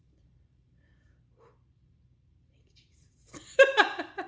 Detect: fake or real fake